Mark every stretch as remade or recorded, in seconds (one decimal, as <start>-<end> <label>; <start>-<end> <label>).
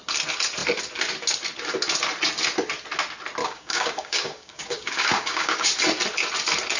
0.0-3.4 recorded; 3.4-5.7 remade; 5.7-6.8 recorded